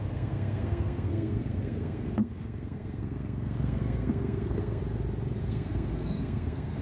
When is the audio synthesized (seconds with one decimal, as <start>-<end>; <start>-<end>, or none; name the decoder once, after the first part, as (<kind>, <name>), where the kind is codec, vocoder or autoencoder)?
0.0-4.8 (codec, SNAC); 5.4-6.8